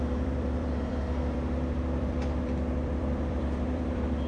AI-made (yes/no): yes